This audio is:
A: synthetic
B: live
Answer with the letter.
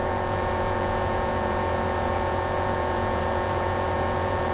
A